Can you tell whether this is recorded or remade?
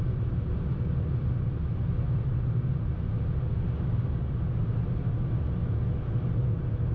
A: recorded